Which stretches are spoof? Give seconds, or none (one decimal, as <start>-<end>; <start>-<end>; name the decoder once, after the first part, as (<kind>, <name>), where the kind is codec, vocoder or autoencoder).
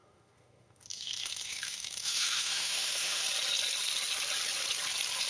0.0-3.2 (autoencoder, DAC-VAE)